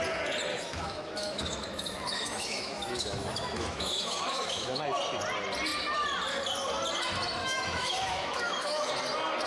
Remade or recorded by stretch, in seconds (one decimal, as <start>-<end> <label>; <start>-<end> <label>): 0.0-0.5 recorded; 0.5-4.8 remade; 4.8-7.4 recorded; 7.4-8.9 remade; 8.9-9.5 recorded